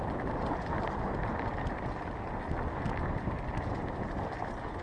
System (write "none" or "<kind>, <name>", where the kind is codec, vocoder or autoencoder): none